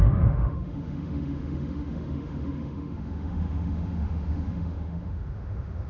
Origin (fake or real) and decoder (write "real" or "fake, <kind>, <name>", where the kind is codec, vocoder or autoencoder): fake, autoencoder, DAC-VAE